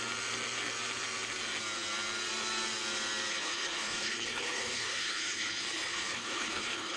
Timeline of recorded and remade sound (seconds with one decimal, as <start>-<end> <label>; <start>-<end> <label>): 0.0-3.3 recorded; 3.3-7.0 remade